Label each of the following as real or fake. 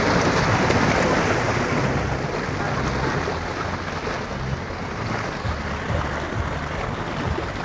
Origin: real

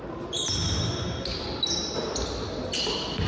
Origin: real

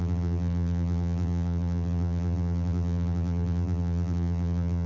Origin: fake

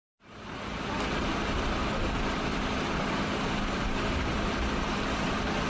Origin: real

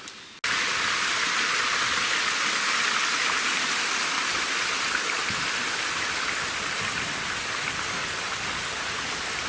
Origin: real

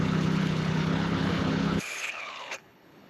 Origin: fake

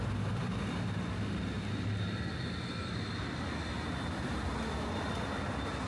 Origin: real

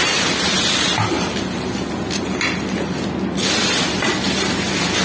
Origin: real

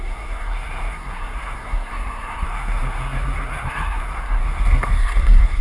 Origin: fake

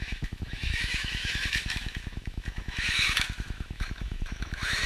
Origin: fake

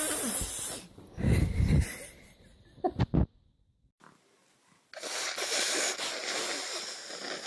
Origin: real